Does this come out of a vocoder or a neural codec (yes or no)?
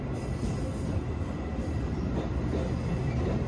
no